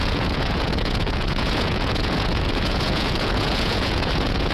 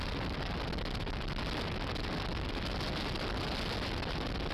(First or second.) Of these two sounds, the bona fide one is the second